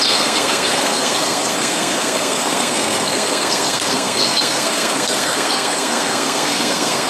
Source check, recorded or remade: remade